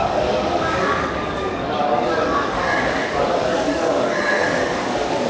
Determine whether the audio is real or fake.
fake